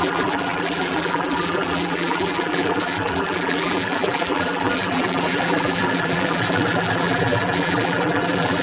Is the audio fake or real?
fake